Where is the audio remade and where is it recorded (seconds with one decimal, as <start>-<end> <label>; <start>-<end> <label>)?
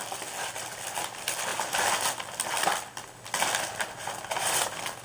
0.0-5.0 recorded